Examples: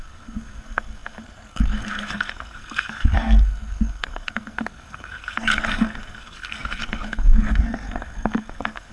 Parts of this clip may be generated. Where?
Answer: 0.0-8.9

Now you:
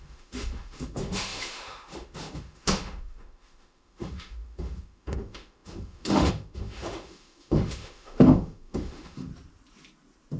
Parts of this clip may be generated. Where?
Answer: 0.0-9.3

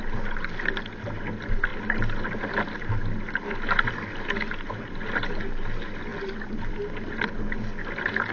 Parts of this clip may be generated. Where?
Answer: none

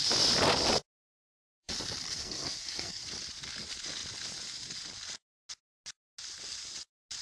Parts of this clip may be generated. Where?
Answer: 1.2-3.0

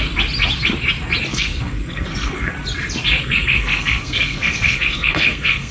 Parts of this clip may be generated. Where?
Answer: 1.3-2.5; 3.2-5.7